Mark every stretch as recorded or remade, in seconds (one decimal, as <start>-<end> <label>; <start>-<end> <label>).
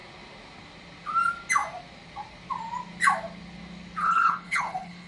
0.0-4.0 recorded; 4.0-5.1 remade